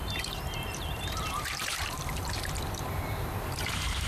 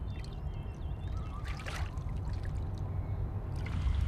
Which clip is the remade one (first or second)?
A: first